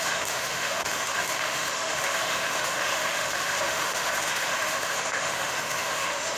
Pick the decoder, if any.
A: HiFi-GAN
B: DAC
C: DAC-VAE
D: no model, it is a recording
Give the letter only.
C